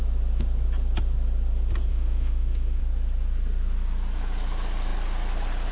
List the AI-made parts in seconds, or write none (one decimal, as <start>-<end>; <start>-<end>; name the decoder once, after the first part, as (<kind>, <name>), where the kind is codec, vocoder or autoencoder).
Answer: 1.9-2.8 (autoencoder, DAC-VAE)